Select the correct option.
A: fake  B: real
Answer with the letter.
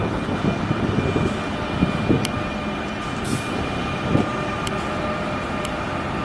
B